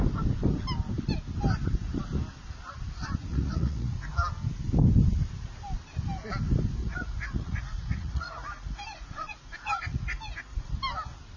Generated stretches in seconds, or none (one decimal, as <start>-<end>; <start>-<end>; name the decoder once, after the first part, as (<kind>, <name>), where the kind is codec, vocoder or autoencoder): 3.3-4.1 (vocoder, Vocos); 6.8-10.7

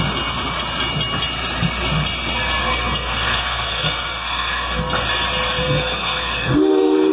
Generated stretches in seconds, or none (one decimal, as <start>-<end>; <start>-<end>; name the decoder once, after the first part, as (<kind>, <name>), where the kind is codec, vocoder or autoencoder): 2.6-4.8 (codec, SNAC); 5.6-7.1